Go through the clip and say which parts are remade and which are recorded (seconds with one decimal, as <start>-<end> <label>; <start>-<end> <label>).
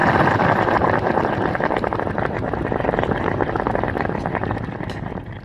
0.0-5.4 recorded